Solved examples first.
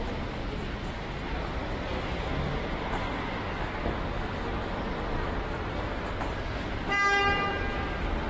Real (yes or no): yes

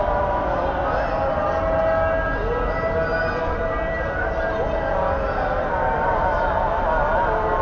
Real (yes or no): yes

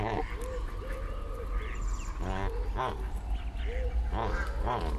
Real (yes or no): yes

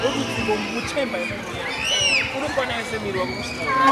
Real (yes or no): yes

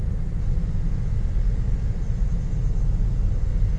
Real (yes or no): yes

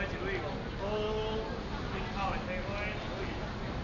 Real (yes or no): yes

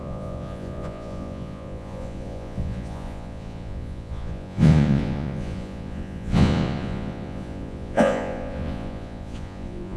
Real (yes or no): no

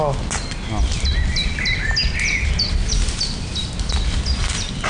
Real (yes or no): yes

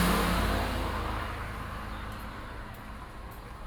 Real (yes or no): yes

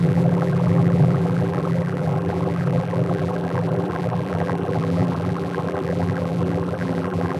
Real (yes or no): no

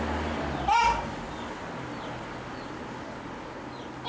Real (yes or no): yes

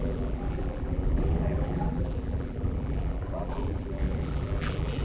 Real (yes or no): no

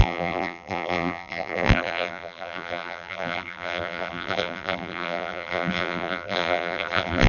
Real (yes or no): no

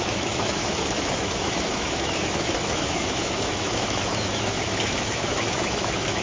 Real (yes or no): no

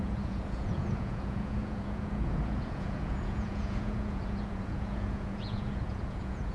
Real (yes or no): no